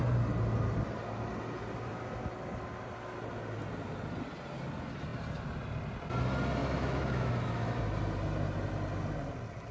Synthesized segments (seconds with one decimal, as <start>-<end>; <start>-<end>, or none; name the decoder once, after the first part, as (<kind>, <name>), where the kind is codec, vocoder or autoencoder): 6.6-7.8 (autoencoder, DAC-VAE)